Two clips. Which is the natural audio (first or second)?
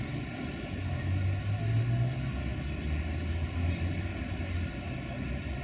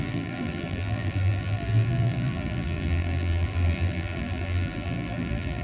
first